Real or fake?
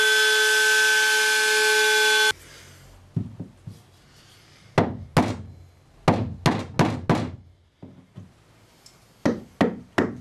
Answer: real